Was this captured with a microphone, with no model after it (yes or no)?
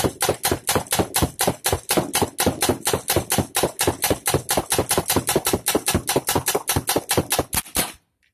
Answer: yes